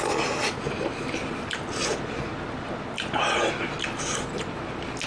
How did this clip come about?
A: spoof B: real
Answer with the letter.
B